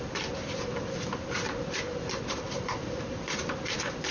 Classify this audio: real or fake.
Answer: fake